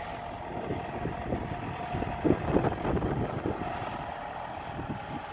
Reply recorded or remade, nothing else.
recorded